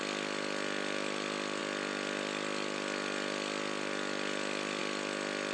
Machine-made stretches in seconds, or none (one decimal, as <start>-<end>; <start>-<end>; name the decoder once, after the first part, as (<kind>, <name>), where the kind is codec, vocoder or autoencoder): none